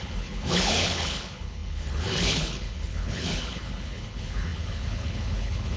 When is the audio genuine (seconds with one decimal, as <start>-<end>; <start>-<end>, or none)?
none